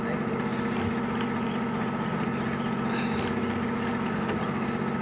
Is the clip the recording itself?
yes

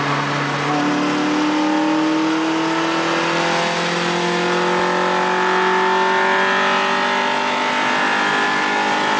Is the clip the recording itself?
yes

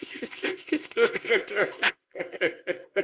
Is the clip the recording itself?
no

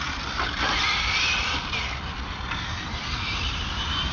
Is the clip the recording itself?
yes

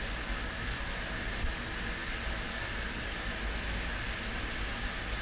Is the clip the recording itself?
yes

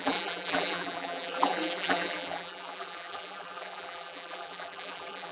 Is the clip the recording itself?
no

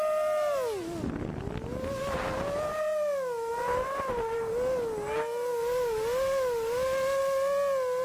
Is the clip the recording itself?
yes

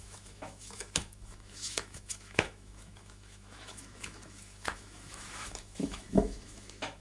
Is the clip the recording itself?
no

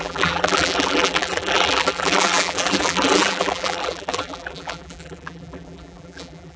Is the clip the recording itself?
no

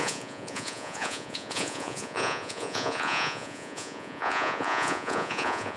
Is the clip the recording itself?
no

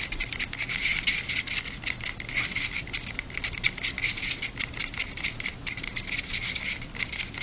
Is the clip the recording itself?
yes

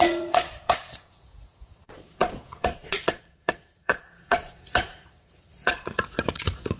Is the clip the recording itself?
no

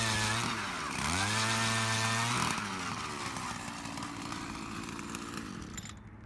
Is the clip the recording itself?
yes